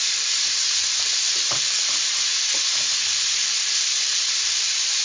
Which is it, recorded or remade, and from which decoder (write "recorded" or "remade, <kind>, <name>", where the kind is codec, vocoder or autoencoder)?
recorded